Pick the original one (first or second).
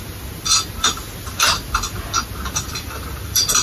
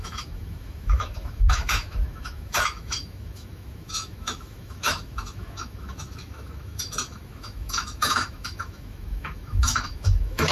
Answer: first